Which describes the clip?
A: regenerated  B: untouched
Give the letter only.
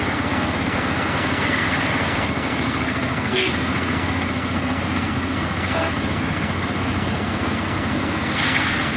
A